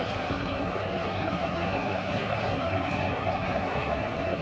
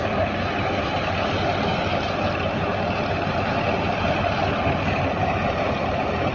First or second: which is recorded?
second